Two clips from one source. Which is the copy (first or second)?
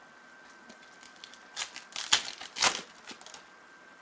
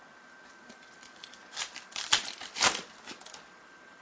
second